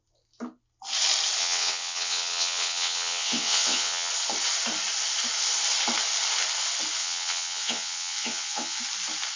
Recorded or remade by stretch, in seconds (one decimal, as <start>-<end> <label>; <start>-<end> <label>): 0.0-1.4 recorded; 1.4-4.1 remade; 4.1-7.0 recorded; 7.0-8.8 remade; 8.8-9.4 recorded